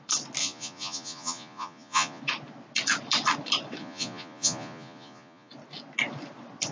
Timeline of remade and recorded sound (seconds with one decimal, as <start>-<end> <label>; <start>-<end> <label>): 0.0-0.4 recorded; 0.4-2.2 remade; 2.2-3.8 recorded; 3.8-5.5 remade; 5.5-6.7 recorded